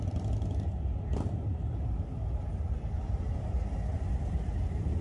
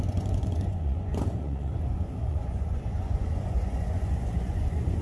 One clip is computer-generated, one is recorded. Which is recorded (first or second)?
first